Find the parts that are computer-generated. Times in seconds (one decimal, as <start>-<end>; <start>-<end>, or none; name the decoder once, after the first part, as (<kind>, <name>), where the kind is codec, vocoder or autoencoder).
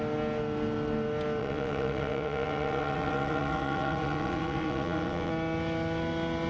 1.4-5.3 (vocoder, WaveNeXt)